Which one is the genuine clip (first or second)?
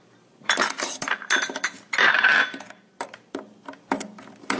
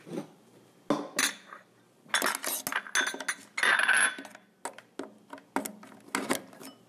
second